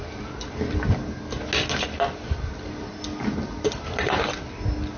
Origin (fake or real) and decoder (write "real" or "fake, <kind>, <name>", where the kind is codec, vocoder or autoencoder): real